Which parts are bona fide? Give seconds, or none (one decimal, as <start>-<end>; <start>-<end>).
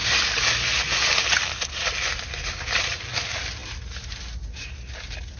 0.0-5.4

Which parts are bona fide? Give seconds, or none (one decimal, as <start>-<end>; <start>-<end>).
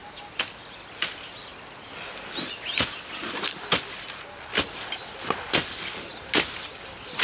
0.0-7.2